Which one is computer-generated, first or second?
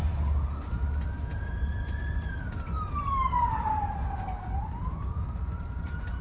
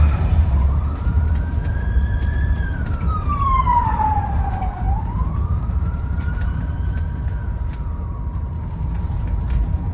second